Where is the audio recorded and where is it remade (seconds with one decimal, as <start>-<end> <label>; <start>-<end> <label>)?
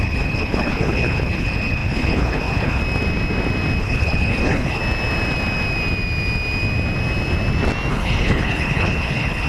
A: 0.0-2.8 remade; 2.8-3.8 recorded; 3.8-4.8 remade; 4.8-7.9 recorded; 7.9-9.5 remade